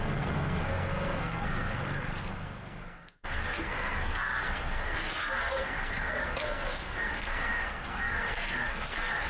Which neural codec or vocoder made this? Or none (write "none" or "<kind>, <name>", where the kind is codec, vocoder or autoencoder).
codec, SNAC